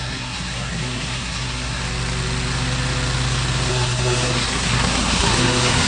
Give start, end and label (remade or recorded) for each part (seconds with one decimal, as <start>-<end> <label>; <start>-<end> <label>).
0.0-1.8 remade; 1.8-3.7 recorded; 3.7-5.9 remade